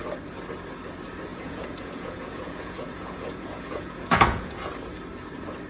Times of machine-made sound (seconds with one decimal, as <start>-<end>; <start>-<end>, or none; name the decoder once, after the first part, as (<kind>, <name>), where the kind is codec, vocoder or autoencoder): 1.3-4.7 (vocoder, Vocos)